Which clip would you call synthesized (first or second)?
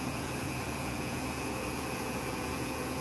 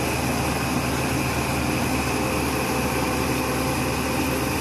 first